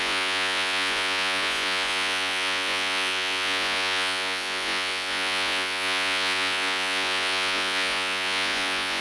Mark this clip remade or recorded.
remade